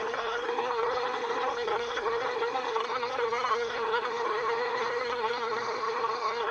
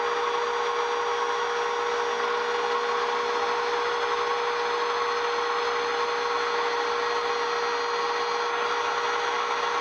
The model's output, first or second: first